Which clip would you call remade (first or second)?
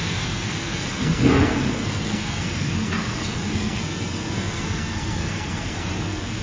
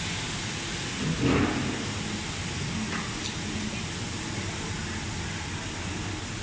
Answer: first